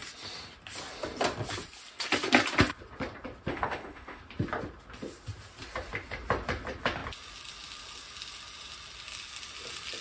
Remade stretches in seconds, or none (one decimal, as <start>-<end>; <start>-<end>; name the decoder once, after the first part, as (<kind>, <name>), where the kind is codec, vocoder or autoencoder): 3.5-4.2 (autoencoder, DAC-VAE)